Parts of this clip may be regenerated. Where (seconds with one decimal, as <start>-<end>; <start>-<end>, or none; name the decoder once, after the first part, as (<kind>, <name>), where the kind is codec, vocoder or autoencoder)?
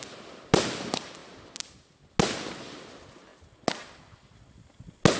none